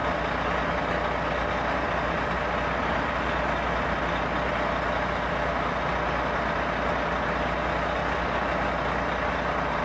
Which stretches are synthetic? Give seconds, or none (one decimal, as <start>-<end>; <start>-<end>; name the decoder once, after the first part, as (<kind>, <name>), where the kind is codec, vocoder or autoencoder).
none